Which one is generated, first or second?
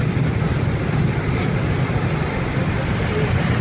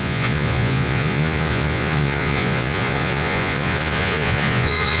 second